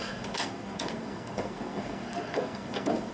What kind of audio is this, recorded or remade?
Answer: remade